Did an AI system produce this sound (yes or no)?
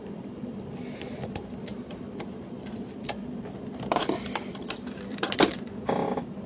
yes